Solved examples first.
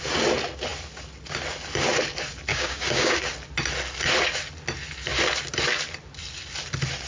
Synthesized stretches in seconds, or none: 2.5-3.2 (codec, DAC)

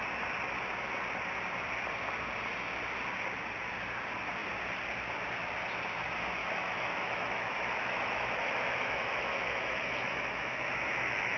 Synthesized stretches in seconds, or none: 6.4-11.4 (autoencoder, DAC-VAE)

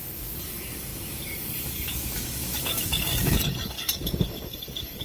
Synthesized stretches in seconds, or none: 0.0-5.0 (codec, DAC)